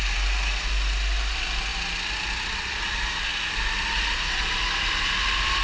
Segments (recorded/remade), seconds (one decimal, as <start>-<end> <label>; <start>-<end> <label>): 0.0-5.6 recorded